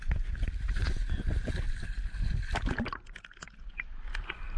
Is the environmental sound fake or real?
real